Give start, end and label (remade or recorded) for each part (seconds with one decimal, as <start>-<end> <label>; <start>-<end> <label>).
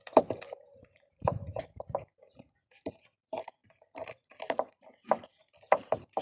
0.0-6.2 remade